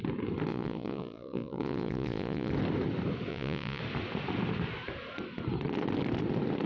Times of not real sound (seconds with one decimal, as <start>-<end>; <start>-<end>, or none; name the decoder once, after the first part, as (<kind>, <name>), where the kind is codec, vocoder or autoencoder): 0.5-2.5 (vocoder, Vocos); 3.3-3.8